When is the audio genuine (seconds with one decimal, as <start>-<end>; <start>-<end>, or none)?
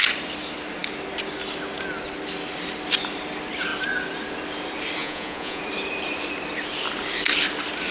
0.0-5.0; 5.6-7.9